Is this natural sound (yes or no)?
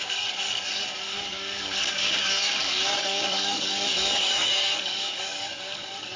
no